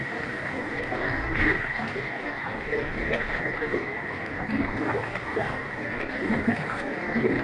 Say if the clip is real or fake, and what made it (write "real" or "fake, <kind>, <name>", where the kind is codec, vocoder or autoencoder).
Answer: fake, codec, DAC